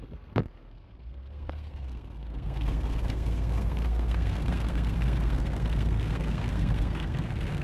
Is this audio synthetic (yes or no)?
yes